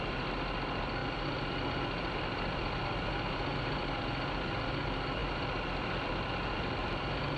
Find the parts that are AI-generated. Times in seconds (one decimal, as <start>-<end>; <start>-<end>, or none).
none